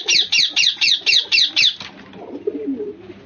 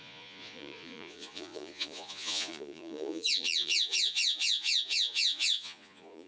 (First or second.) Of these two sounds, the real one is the first